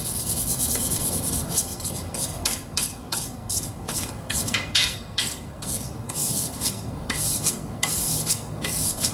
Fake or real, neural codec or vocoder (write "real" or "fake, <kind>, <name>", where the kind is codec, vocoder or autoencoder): fake, codec, SNAC